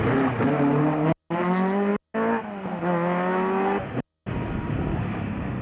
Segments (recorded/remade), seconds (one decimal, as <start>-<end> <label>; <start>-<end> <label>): 0.0-5.6 recorded